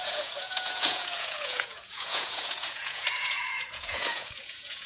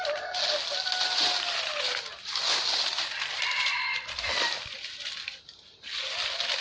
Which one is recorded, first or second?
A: second